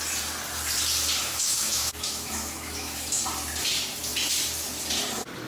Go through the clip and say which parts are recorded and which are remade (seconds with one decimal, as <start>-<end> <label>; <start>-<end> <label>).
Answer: 0.0-1.2 recorded; 1.2-3.2 remade; 3.2-5.5 recorded